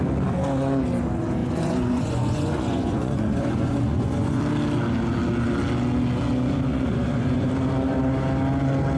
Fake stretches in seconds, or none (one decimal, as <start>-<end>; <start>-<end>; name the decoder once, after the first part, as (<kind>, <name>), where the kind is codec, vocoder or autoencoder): 1.4-4.4 (vocoder, Vocos); 6.7-7.5